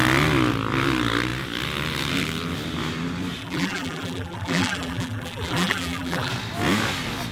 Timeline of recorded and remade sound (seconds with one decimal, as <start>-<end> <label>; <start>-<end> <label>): 0.0-3.4 recorded; 3.4-6.3 remade; 6.3-7.3 recorded